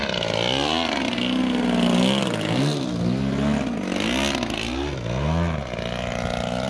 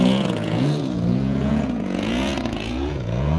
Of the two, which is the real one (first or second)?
first